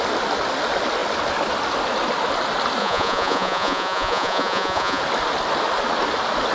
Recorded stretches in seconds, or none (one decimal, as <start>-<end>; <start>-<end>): 0.0-2.8; 5.0-6.5